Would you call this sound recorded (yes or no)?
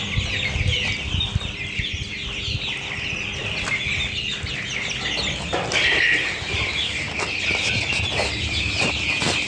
yes